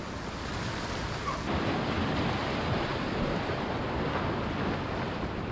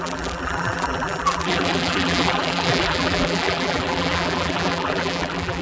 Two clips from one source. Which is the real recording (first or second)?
first